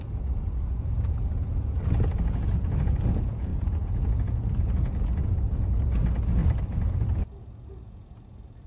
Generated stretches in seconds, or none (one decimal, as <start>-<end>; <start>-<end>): 0.0-6.4; 6.9-8.7